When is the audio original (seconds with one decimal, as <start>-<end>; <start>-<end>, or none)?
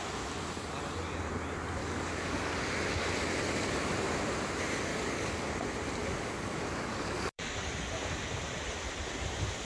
0.0-1.8; 2.6-4.9; 5.5-6.0; 7.7-9.6